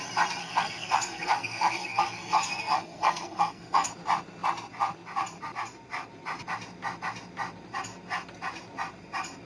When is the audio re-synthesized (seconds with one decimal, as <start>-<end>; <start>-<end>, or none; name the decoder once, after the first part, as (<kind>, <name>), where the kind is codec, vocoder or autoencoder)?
0.4-3.9 (codec, SNAC)